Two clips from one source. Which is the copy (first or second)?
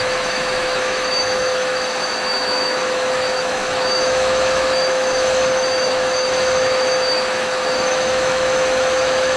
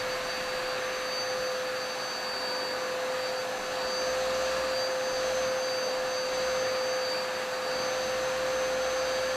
first